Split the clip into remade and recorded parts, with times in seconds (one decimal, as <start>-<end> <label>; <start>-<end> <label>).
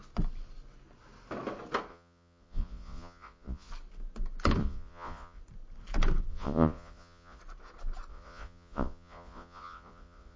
0.0-1.9 recorded; 1.9-3.7 remade; 3.7-4.6 recorded; 4.6-5.4 remade; 5.4-6.3 recorded; 6.3-7.4 remade; 7.4-8.1 recorded; 8.1-10.4 remade